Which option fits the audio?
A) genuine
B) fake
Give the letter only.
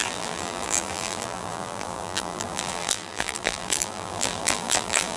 B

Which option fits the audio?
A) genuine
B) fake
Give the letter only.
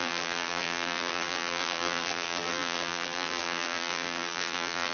B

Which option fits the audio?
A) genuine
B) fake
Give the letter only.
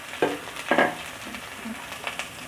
A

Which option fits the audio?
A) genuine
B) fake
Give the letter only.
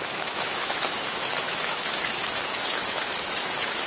B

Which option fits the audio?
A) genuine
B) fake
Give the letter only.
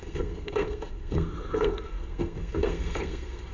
B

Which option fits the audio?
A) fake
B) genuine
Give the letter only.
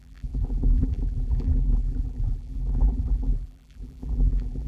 A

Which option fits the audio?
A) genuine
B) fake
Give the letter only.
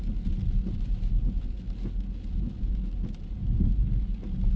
A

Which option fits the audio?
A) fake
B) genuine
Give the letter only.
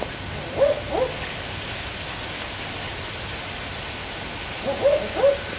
B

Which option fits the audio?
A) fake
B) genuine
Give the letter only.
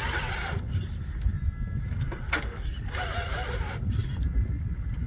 B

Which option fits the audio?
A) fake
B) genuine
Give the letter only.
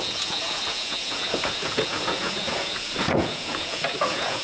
A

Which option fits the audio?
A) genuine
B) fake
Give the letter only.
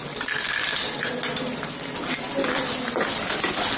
A